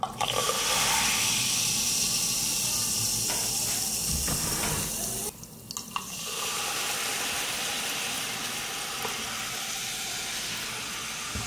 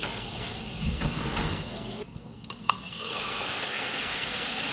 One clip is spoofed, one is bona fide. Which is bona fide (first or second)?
first